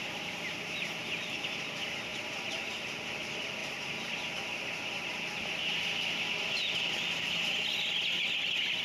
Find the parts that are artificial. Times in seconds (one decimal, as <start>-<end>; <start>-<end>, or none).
1.0-1.7